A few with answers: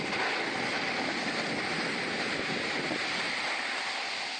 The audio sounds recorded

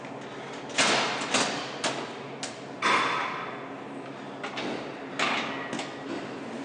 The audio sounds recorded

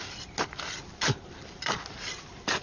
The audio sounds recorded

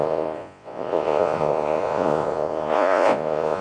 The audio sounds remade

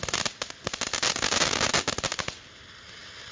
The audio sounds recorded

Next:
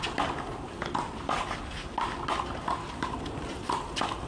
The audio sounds recorded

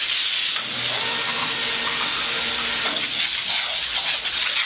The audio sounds recorded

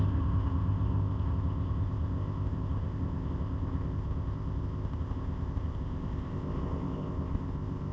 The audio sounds remade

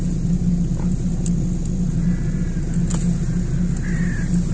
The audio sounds recorded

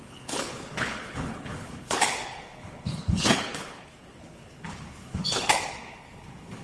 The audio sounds remade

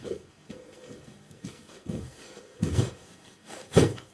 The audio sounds remade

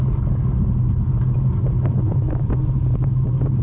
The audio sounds recorded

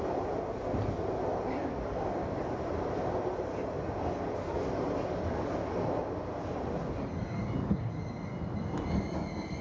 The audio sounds recorded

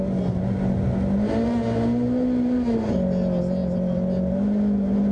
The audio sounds recorded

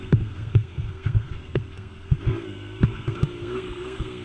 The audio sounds remade